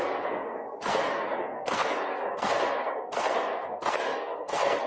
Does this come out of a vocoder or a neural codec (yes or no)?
yes